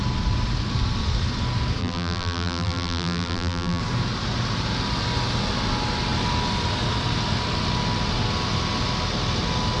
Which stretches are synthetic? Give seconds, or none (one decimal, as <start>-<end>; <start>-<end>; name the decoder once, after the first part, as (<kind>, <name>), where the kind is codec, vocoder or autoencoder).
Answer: 1.8-3.8 (vocoder, BigVGAN v2)